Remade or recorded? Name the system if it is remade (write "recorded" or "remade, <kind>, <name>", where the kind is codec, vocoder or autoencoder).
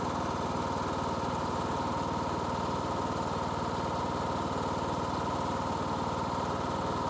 recorded